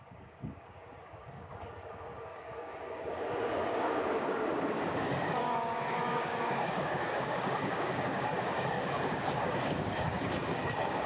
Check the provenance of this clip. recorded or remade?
remade